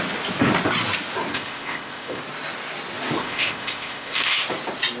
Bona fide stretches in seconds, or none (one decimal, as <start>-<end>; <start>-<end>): 0.0-1.3; 2.2-3.2; 4.4-5.0